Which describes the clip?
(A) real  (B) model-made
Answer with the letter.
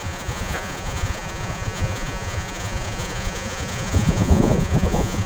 B